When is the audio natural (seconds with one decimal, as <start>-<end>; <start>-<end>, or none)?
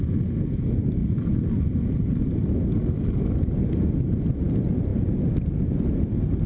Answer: 0.0-1.0; 3.9-6.5